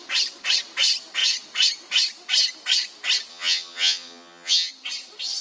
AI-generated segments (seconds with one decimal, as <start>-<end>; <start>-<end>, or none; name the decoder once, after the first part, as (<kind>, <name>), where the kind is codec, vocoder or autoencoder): 3.3-4.7 (vocoder, HiFi-GAN)